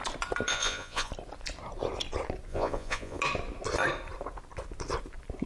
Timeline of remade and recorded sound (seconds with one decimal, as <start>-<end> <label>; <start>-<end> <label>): 0.0-0.5 recorded; 0.5-1.1 remade; 1.1-2.5 recorded; 2.5-3.2 remade; 3.2-5.5 recorded